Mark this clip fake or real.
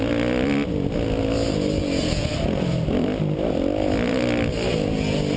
real